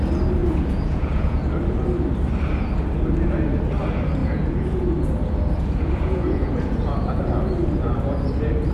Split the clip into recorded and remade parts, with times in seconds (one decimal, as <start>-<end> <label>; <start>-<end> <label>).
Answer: 0.0-0.4 recorded; 0.4-1.5 remade; 1.5-4.2 recorded; 4.2-7.2 remade; 7.2-8.7 recorded